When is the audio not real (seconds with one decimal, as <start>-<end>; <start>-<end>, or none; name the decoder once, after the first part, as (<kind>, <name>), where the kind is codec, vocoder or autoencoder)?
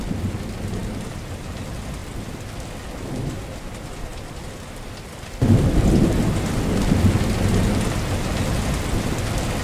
0.8-1.5 (vocoder, BigVGAN v2)